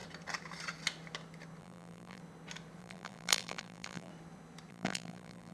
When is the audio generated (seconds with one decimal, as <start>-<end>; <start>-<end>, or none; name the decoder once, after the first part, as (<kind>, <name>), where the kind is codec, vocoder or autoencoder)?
1.6-2.2 (vocoder, BigVGAN v2); 2.8-4.1; 4.7-5.5